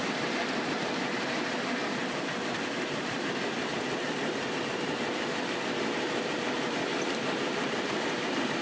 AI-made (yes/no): yes